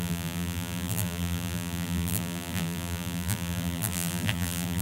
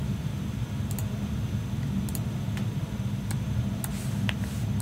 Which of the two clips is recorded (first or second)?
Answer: second